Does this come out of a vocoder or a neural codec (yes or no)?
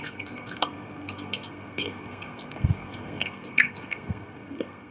yes